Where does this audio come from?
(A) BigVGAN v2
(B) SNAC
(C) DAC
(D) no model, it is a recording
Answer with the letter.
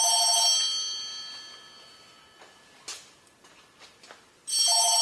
D